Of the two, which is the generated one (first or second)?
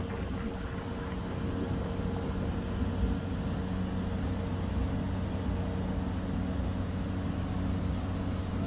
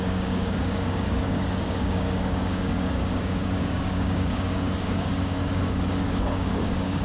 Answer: second